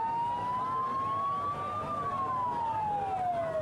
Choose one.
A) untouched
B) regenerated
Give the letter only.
A